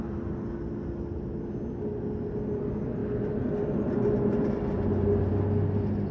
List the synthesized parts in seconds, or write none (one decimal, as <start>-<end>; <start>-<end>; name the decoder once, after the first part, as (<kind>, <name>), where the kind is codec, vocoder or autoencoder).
none